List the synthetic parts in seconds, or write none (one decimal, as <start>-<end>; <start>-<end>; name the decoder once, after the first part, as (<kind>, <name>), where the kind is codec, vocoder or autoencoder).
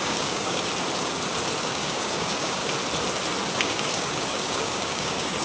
0.0-0.7 (codec, DAC); 1.6-2.6; 3.5-5.4